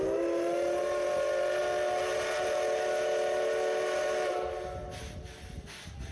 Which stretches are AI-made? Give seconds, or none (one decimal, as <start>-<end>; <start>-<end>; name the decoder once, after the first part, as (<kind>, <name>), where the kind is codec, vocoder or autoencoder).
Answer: none